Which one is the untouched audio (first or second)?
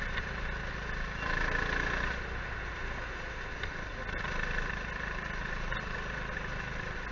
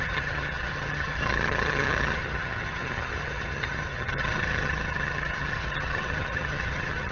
first